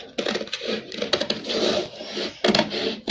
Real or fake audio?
real